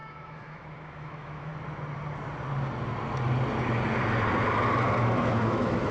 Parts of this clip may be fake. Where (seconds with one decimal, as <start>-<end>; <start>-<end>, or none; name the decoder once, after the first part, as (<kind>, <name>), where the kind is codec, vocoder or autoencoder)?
0.0-1.5 (autoencoder, DAC-VAE); 5.0-5.9